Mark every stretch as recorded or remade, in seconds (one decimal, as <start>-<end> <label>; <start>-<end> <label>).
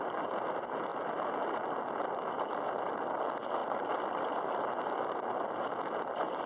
0.0-3.6 recorded; 3.6-5.3 remade; 5.3-6.5 recorded